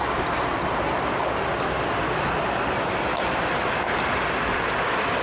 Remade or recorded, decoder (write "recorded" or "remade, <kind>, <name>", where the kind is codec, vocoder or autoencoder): recorded